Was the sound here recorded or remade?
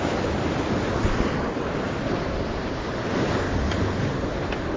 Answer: recorded